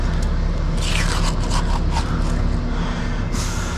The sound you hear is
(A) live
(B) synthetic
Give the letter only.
A